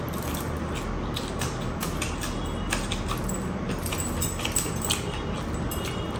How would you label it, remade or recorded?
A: recorded